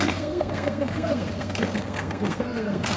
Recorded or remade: remade